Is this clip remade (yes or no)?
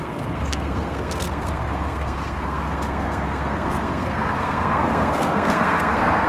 yes